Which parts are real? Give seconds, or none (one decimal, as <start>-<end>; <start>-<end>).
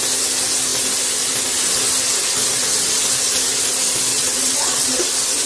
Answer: 0.0-4.1; 5.1-5.5